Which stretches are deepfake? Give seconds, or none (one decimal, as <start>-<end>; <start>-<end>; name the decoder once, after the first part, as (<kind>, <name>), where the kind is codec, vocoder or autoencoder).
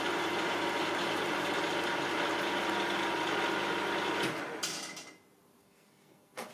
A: 5.6-6.5 (codec, SNAC)